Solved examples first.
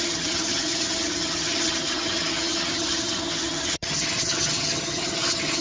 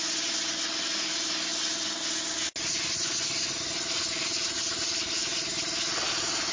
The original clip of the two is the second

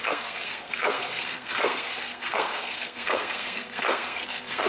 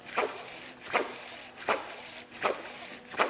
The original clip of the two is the second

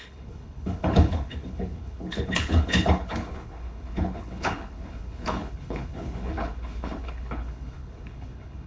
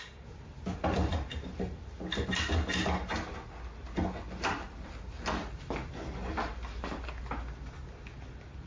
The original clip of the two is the second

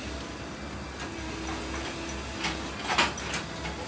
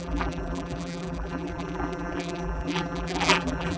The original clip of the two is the first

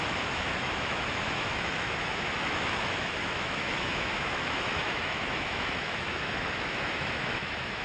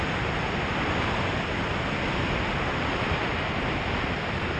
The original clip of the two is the second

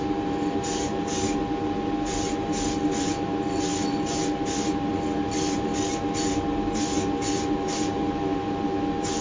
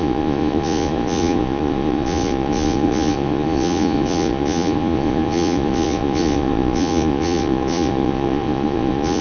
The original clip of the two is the first